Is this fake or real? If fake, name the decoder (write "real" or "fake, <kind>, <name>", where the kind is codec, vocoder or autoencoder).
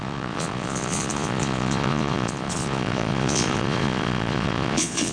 fake, vocoder, Vocos